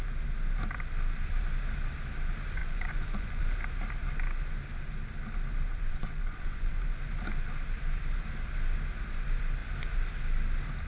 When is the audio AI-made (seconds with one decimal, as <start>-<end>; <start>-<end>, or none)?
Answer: 2.6-3.4; 5.7-6.7